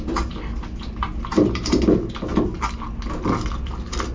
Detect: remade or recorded recorded